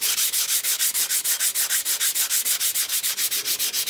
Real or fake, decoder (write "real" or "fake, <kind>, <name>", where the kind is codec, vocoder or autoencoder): real